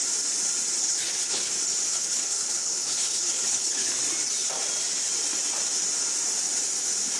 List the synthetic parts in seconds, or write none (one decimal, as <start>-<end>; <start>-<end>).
0.8-1.5; 1.9-3.9